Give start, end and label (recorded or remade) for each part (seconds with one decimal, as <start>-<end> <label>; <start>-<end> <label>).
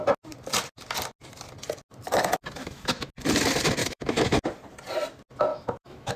0.0-2.6 recorded; 2.6-3.1 remade; 3.1-3.8 recorded; 3.8-4.4 remade; 4.4-5.5 recorded; 5.5-6.2 remade